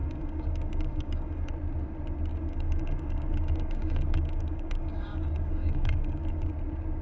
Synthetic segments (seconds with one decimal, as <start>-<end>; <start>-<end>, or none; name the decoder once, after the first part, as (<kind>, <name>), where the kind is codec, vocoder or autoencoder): 0.0-1.5 (codec, DAC); 2.3-6.5